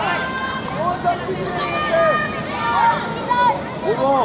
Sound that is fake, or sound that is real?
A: real